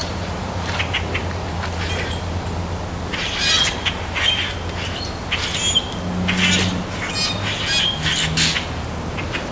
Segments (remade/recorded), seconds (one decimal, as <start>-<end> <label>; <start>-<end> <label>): 0.0-0.8 remade; 0.8-9.5 recorded